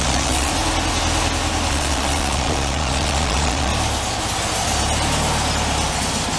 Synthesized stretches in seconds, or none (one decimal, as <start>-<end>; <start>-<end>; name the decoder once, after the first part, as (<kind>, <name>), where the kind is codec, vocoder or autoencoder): 0.0-0.5 (vocoder, Vocos); 1.7-3.7